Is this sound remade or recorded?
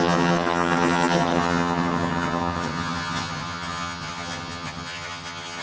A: remade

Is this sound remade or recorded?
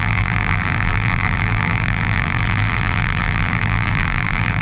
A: remade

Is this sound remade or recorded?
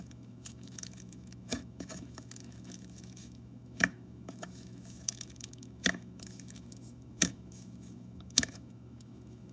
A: remade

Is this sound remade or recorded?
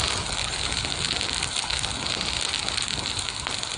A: recorded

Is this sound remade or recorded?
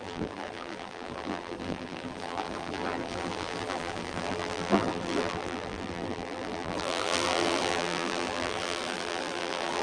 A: remade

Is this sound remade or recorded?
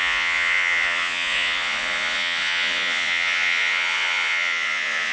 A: remade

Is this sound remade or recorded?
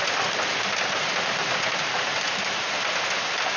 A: recorded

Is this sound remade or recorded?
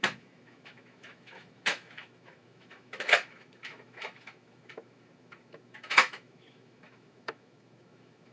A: remade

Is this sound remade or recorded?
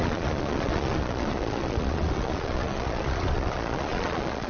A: remade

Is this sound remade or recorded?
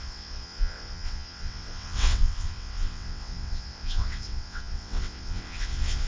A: remade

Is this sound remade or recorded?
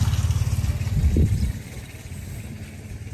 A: recorded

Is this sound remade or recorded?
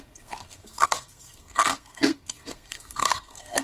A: remade